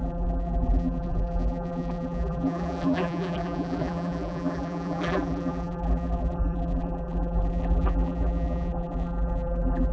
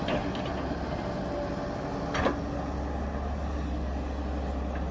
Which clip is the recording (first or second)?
second